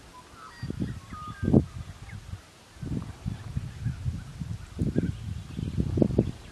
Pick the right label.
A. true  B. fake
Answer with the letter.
A